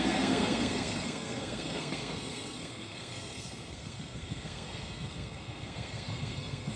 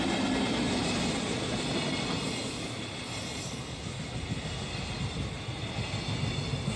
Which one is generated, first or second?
first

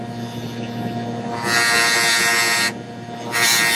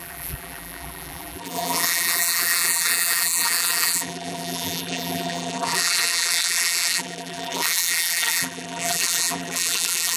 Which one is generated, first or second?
second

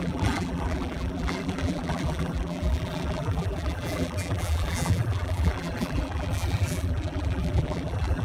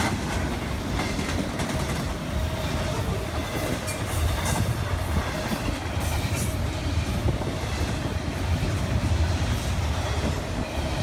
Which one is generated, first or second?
first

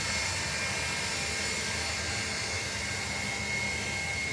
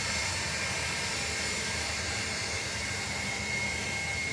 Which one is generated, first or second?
second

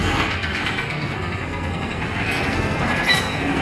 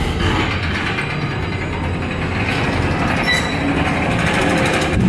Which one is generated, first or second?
first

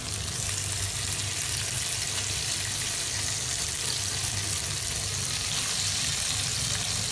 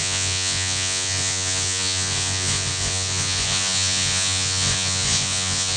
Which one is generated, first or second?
second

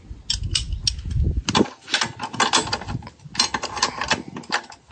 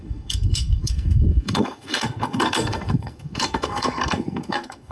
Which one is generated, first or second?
second